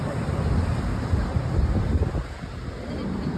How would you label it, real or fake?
real